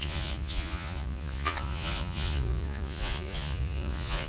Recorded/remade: remade